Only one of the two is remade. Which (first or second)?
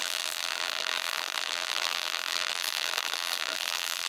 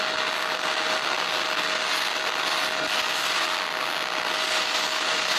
first